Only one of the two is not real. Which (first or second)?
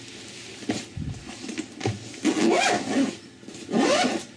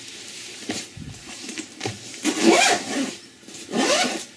second